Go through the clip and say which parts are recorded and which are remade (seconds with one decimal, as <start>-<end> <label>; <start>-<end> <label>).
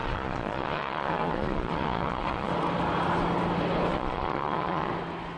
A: 0.0-2.5 remade; 2.5-3.9 recorded; 3.9-4.9 remade; 4.9-5.4 recorded